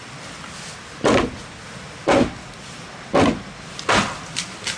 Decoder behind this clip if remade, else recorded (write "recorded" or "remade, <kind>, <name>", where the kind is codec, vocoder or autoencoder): recorded